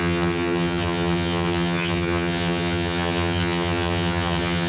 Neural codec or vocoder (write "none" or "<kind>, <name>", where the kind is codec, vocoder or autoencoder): vocoder, HiFi-GAN